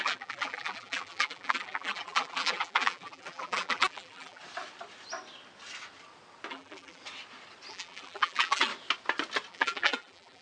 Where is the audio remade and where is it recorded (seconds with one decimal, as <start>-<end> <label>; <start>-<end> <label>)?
0.0-4.4 remade; 4.4-6.5 recorded; 6.5-7.0 remade; 7.0-7.7 recorded; 7.7-8.7 remade; 8.7-9.5 recorded; 9.5-10.4 remade